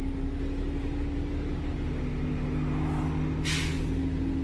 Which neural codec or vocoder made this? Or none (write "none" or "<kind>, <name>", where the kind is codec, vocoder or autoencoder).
none